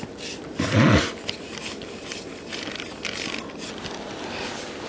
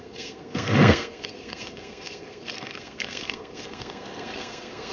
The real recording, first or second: first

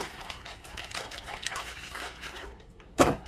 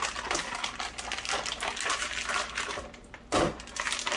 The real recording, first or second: second